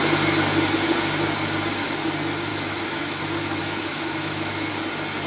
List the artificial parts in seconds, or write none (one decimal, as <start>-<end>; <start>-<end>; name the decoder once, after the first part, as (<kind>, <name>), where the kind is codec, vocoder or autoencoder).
2.5-3.2 (autoencoder, DAC-VAE); 3.6-4.7